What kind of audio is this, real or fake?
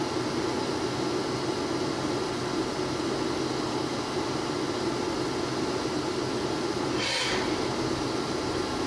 real